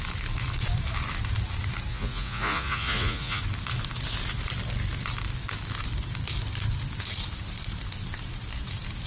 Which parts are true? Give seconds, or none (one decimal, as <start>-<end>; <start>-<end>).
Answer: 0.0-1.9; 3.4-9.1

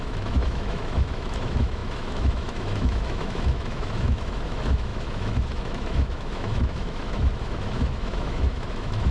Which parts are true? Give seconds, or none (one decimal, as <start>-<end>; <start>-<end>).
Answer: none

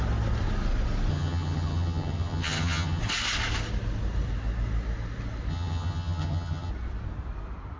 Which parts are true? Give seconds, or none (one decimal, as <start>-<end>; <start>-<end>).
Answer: 0.0-1.1; 3.0-5.5; 6.7-7.8

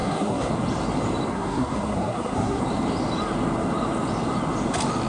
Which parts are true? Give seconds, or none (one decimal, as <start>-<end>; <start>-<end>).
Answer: 0.5-1.3; 2.6-5.1

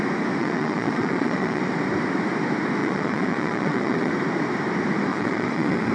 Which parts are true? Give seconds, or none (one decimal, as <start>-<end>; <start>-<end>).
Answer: 0.0-0.4; 1.6-2.8; 4.1-5.1

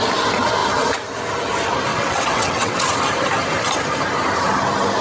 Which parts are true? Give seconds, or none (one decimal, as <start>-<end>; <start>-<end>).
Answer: 0.0-1.9; 2.8-5.0

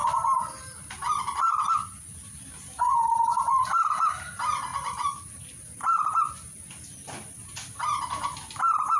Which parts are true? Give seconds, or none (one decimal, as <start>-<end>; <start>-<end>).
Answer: 1.5-4.7; 5.3-9.0